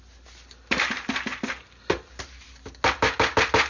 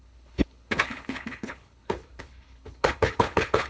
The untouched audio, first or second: first